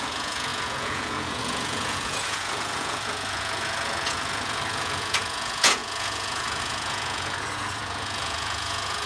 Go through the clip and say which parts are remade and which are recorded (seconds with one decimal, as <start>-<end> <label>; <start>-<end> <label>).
0.0-9.1 remade